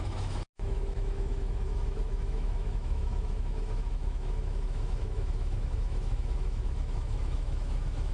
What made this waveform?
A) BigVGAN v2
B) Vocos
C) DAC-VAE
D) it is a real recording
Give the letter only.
C